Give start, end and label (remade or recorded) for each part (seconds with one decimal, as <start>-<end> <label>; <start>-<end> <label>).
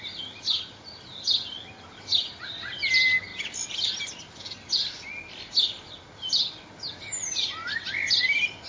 0.0-8.7 recorded